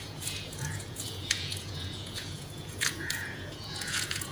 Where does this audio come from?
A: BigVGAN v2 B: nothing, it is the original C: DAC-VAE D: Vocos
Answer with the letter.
D